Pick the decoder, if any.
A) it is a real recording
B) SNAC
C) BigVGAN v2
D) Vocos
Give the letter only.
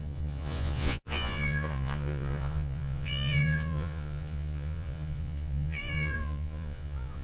D